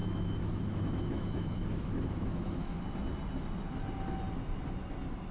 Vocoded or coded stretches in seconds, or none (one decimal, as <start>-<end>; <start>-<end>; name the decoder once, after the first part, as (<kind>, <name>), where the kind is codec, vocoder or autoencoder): 0.0-2.8 (autoencoder, DAC-VAE)